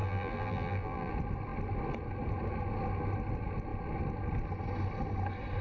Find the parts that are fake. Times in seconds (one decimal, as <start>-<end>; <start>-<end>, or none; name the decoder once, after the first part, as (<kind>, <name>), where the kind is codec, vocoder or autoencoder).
0.0-1.1 (vocoder, BigVGAN v2)